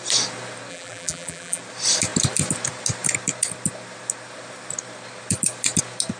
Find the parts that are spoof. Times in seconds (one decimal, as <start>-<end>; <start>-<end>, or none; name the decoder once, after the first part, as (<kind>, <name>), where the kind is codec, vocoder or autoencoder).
0.7-1.6 (vocoder, BigVGAN v2)